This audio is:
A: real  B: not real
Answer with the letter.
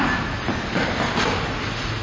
A